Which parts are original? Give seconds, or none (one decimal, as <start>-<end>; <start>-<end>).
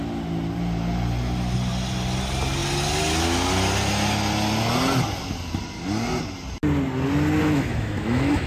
0.0-7.4